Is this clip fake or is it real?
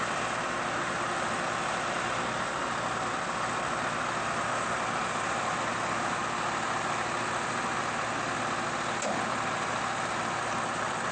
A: real